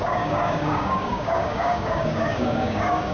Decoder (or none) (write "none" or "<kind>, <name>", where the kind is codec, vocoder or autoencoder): codec, DAC